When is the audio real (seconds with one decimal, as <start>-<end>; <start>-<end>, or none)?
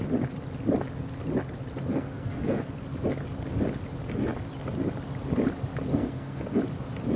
0.0-1.9; 2.7-5.9; 6.6-7.2